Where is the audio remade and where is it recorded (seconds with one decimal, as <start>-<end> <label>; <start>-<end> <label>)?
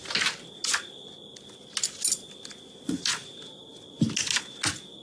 0.0-5.0 recorded